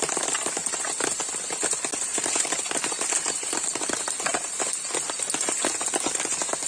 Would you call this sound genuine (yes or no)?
yes